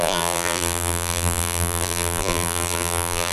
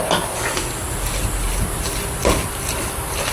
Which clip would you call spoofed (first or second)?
first